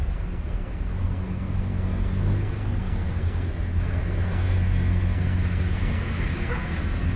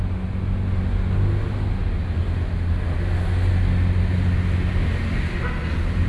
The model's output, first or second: first